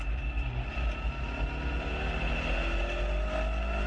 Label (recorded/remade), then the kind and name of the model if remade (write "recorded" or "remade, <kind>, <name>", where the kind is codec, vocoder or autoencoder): recorded